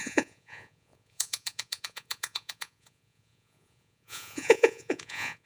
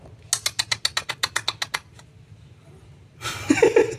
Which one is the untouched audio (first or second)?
second